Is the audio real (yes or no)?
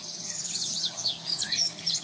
no